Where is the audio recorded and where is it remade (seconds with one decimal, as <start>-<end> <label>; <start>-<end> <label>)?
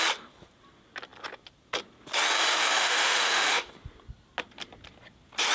0.0-2.5 recorded; 2.5-3.7 remade; 3.7-5.5 recorded